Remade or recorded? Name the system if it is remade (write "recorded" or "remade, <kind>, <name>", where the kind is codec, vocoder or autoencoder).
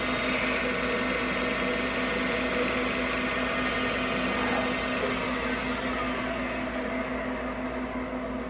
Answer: recorded